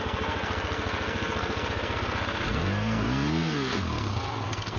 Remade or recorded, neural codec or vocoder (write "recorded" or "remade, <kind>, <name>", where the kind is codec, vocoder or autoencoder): remade, codec, SNAC